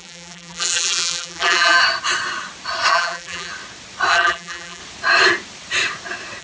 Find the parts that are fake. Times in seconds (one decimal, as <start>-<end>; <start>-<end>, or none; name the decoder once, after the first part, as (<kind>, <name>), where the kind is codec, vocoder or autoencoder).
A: 0.0-1.8 (vocoder, BigVGAN v2); 2.9-3.5; 4.1-4.8